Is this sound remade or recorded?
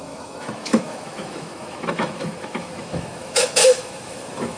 remade